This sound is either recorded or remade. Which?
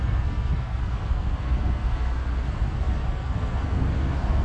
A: remade